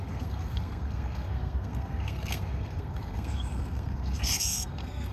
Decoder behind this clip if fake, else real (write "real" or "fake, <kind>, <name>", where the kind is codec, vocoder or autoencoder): fake, codec, SNAC